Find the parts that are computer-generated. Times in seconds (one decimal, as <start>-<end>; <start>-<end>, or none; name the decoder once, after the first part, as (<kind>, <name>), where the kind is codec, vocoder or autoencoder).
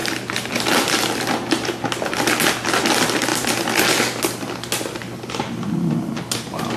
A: none